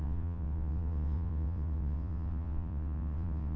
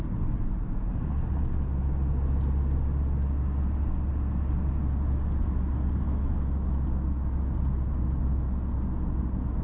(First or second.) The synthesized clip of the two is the first